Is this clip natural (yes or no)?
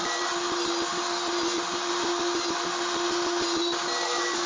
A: yes